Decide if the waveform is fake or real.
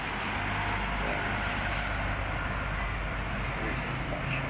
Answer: real